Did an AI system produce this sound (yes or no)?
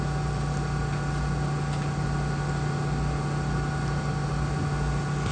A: no